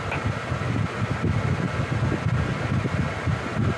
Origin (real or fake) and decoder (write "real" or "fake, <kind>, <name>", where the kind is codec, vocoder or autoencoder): real